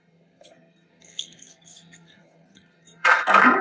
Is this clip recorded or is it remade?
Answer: remade